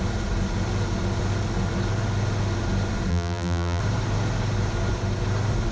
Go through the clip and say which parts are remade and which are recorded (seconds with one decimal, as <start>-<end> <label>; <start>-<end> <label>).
0.0-3.1 recorded; 3.1-3.8 remade; 3.8-5.7 recorded